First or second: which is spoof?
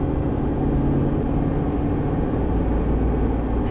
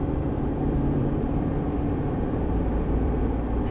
second